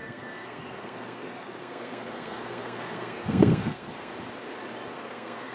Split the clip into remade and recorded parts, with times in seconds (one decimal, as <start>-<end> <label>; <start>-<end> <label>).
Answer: 0.0-4.1 remade; 4.1-4.9 recorded; 4.9-5.5 remade